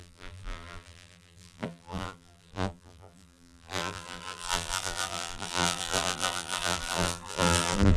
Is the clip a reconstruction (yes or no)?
yes